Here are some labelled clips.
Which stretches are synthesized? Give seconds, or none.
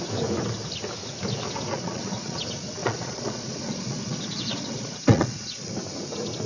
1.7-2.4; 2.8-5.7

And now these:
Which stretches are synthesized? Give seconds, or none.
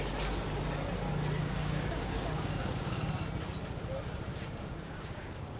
1.4-3.0; 4.3-5.6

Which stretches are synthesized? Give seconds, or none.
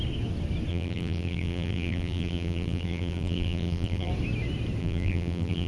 0.7-4.1; 4.8-5.7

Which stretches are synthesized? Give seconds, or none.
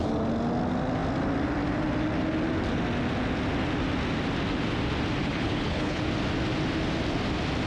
5.2-6.0